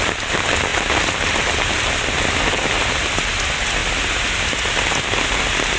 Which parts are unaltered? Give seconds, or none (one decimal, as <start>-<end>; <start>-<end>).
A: 0.0-5.8